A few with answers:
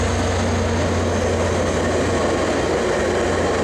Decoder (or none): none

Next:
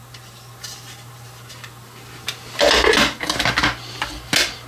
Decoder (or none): none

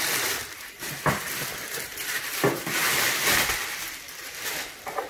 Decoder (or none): vocoder, BigVGAN v2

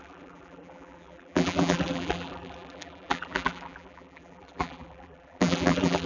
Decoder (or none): vocoder, BigVGAN v2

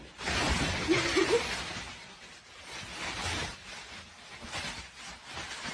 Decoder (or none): none